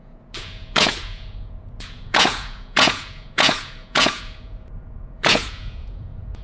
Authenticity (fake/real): fake